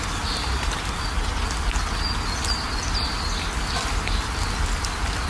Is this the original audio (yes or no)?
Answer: yes